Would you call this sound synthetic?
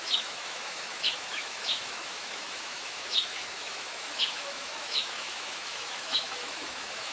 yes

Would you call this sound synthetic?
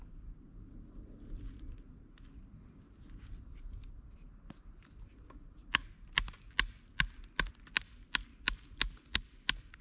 no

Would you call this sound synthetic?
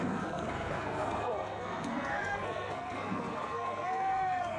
yes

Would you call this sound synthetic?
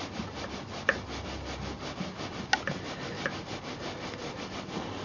no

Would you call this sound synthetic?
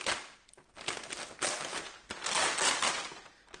no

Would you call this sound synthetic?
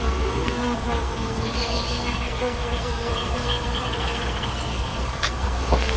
yes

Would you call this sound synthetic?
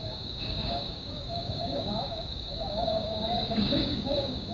yes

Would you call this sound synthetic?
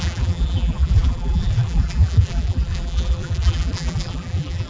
yes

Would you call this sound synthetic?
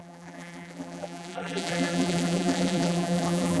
yes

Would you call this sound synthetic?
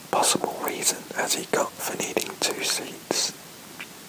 no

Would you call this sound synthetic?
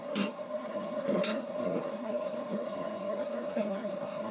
yes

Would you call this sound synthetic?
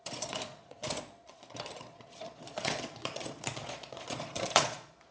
yes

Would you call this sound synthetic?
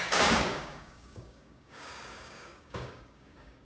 yes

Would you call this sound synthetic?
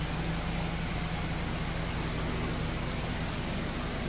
no